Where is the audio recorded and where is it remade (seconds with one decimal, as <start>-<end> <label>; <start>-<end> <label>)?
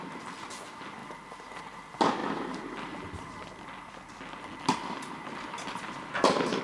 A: 0.0-6.6 recorded